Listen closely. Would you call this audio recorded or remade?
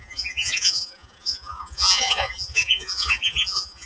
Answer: remade